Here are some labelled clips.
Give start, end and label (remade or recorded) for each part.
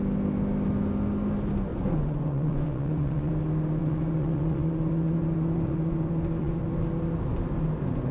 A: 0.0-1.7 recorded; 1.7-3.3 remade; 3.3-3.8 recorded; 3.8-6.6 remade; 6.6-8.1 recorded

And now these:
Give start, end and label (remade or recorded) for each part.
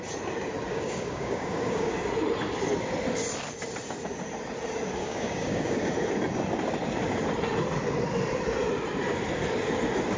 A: 0.0-0.7 recorded; 0.7-1.9 remade; 1.9-5.0 recorded; 5.0-5.8 remade; 5.8-10.2 recorded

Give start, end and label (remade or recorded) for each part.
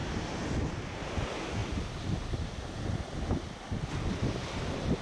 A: 0.0-5.0 recorded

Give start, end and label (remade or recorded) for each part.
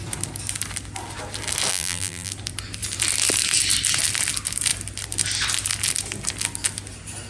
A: 0.0-1.7 recorded; 1.7-2.3 remade; 2.3-7.3 recorded